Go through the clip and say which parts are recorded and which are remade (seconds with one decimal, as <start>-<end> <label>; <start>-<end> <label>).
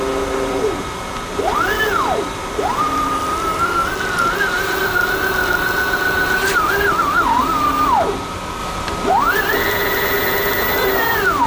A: 0.0-11.5 recorded